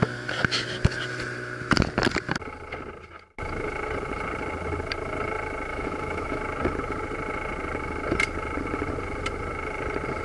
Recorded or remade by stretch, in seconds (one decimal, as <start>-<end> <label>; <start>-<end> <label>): 0.0-5.7 recorded; 5.7-6.4 remade; 6.4-10.2 recorded